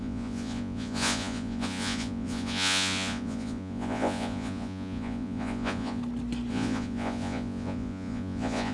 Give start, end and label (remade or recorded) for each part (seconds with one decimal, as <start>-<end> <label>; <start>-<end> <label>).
0.0-6.0 remade; 6.0-6.5 recorded; 6.5-8.7 remade